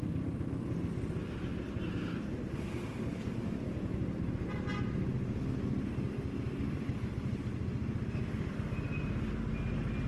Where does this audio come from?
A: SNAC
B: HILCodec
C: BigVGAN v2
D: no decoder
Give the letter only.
D